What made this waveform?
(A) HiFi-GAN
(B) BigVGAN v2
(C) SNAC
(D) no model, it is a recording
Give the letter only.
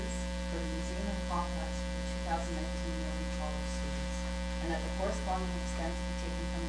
D